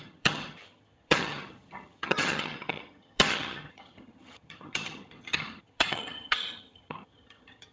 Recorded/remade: remade